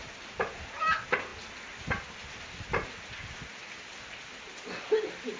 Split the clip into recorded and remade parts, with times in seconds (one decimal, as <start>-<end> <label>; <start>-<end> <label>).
0.0-5.4 recorded